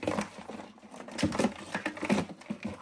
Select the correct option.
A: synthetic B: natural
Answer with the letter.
B